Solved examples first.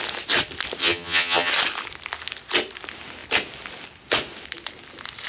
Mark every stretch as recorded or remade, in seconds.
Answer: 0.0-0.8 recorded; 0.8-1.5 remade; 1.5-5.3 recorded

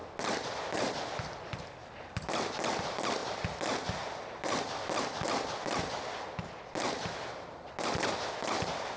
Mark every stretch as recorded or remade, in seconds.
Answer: 0.0-9.0 recorded

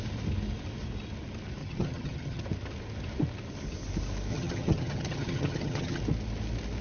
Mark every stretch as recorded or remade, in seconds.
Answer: 0.0-1.6 recorded; 1.6-2.4 remade; 2.4-4.3 recorded; 4.3-6.0 remade; 6.0-6.8 recorded

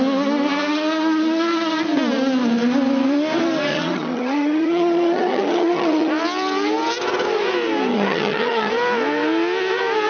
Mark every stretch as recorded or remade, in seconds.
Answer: 0.0-3.7 recorded; 3.7-6.1 remade; 6.1-7.9 recorded; 7.9-8.7 remade; 8.7-10.1 recorded

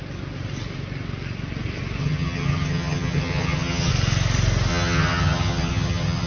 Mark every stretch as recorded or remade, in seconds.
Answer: 0.0-2.0 recorded; 2.0-3.9 remade; 3.9-4.7 recorded; 4.7-6.3 remade

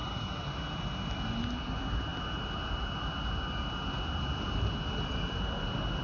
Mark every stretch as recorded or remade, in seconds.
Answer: 0.0-6.0 recorded